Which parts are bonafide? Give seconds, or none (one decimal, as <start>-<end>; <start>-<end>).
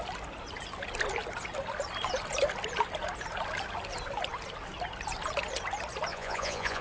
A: 0.0-6.1